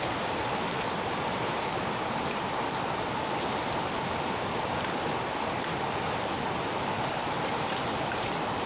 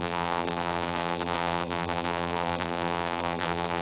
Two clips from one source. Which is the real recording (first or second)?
first